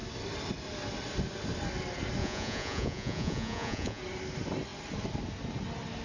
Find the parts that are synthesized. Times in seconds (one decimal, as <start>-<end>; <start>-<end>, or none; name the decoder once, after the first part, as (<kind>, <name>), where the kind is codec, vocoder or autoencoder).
2.2-4.0 (vocoder, Vocos)